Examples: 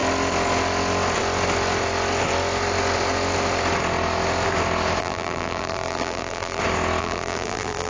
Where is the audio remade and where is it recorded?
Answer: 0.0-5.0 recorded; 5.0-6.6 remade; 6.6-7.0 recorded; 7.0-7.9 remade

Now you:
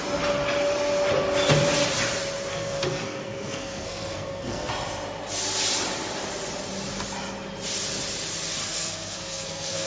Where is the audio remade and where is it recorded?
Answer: 0.0-2.5 recorded; 2.5-4.7 remade; 4.7-8.6 recorded; 8.6-9.9 remade